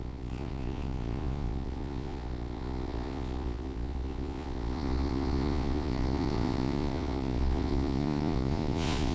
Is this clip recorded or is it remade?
remade